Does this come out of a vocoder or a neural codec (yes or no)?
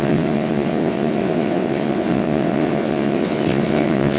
yes